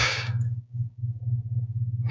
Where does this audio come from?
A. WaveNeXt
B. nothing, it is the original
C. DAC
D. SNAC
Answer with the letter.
C